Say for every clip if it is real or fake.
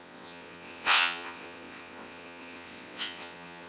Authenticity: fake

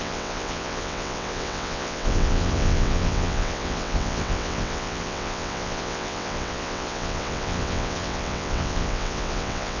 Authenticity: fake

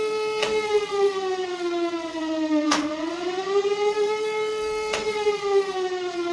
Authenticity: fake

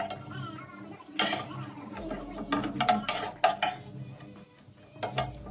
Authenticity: real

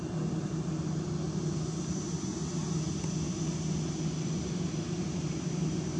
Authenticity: real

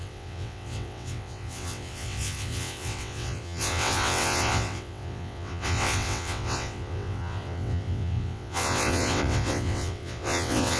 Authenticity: fake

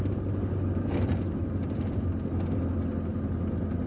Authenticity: real